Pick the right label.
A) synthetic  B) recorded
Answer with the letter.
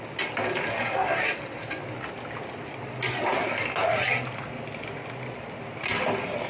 B